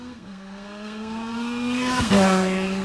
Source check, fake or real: fake